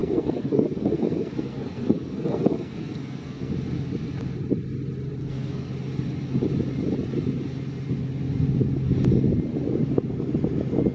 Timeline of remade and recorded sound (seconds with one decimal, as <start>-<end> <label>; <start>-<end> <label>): 0.0-3.5 remade; 3.5-5.2 recorded; 5.2-5.7 remade; 5.7-10.9 recorded